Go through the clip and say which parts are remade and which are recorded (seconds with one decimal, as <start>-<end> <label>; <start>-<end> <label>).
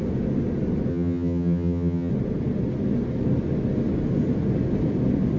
0.0-0.9 recorded; 0.9-2.1 remade; 2.1-5.4 recorded